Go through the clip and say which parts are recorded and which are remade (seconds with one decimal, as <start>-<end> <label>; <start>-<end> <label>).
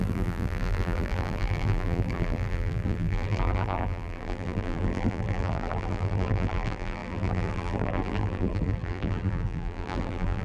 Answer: 0.0-10.4 remade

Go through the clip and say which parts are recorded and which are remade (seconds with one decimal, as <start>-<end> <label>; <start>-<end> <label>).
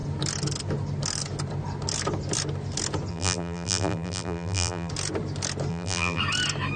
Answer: 0.0-3.1 recorded; 3.1-4.9 remade; 4.9-5.7 recorded; 5.7-6.2 remade; 6.2-6.8 recorded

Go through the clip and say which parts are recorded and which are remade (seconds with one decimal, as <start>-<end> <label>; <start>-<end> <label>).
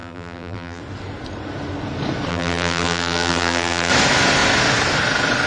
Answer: 0.0-0.8 remade; 0.8-2.3 recorded; 2.3-3.9 remade; 3.9-5.5 recorded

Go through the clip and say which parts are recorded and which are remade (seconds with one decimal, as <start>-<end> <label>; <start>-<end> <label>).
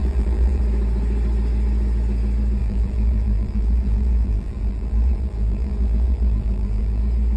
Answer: 0.0-0.6 remade; 0.6-2.6 recorded; 2.6-7.0 remade; 7.0-7.4 recorded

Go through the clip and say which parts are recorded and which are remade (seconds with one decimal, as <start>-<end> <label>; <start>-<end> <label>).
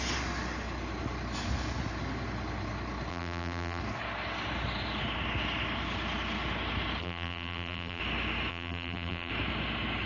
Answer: 0.0-3.1 recorded; 3.1-3.8 remade; 3.8-7.0 recorded; 7.0-8.0 remade; 8.0-8.5 recorded; 8.5-9.3 remade; 9.3-10.1 recorded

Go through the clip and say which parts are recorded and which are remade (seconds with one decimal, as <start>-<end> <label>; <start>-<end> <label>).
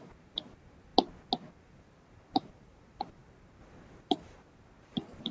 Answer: 0.0-0.9 remade; 0.9-1.5 recorded; 1.5-5.3 remade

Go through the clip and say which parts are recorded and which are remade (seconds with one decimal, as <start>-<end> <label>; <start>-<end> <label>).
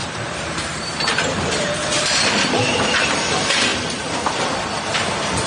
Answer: 0.0-3.7 remade; 3.7-4.3 recorded; 4.3-5.5 remade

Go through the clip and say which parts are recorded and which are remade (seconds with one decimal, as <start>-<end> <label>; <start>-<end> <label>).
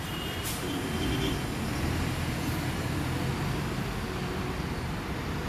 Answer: 0.0-3.3 remade; 3.3-5.5 recorded